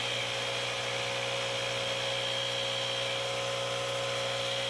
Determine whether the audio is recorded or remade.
recorded